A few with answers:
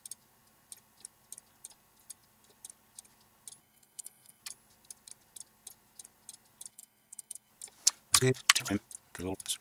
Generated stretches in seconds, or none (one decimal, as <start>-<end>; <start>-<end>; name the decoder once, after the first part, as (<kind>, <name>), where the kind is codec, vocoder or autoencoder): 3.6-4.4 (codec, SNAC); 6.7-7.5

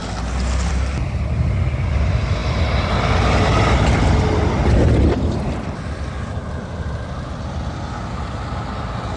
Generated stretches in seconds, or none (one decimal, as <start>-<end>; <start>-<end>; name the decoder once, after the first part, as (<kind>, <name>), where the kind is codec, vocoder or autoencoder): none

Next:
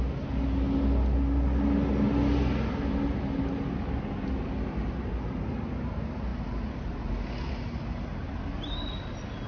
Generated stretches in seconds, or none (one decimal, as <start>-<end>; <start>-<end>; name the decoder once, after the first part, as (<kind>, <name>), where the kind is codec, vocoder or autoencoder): none

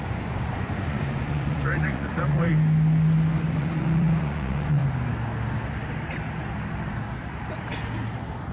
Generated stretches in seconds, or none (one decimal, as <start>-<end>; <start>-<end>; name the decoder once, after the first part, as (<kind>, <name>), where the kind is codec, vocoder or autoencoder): 0.0-2.5 (vocoder, Vocos); 3.6-4.8

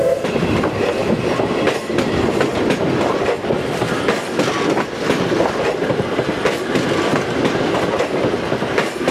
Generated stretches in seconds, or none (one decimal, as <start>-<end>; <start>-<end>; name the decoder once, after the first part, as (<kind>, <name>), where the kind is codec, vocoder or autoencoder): none

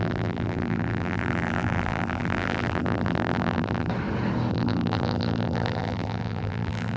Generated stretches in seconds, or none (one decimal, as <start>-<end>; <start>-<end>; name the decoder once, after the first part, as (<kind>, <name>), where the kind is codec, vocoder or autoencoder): 0.0-3.9 (vocoder, BigVGAN v2); 4.5-7.0

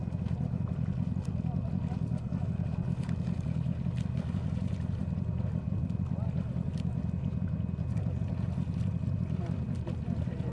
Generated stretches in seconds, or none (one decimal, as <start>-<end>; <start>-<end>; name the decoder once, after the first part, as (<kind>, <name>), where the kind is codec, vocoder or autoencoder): none

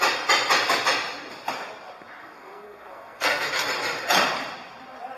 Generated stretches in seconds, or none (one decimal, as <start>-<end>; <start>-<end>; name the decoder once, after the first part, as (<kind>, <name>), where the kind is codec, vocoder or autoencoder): 2.2-3.5 (codec, SNAC)